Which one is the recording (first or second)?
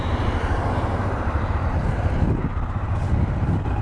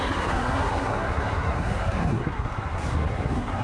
first